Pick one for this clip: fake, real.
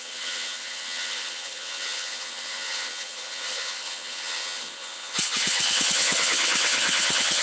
fake